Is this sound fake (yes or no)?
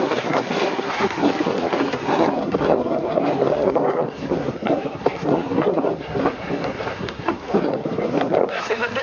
yes